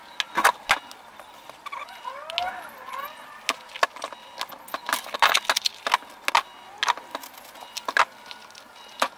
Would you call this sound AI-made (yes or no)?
no